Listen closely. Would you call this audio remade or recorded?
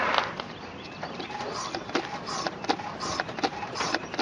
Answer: remade